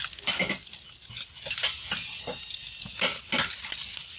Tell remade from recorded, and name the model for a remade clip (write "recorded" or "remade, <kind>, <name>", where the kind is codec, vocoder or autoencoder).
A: recorded